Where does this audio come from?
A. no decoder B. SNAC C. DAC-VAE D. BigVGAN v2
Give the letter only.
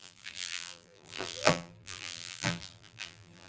D